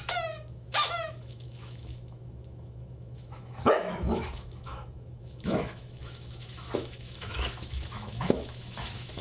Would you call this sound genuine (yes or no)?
no